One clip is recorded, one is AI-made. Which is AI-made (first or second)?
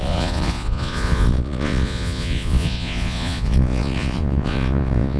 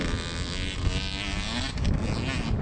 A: first